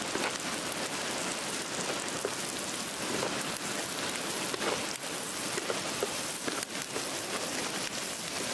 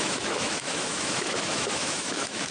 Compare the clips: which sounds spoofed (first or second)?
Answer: second